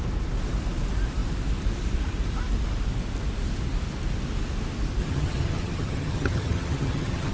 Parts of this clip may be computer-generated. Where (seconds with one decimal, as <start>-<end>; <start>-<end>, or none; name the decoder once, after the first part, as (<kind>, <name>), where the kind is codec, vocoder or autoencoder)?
5.0-7.3 (vocoder, HiFi-GAN)